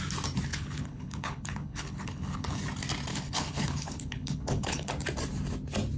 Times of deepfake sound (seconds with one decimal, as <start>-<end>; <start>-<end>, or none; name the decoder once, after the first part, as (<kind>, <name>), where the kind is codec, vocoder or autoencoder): 0.5-2.6 (codec, HILCodec); 3.1-4.9